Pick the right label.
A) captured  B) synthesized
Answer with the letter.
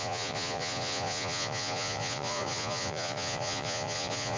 B